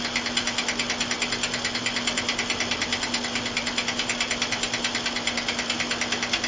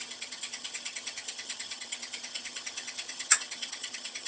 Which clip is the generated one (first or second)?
second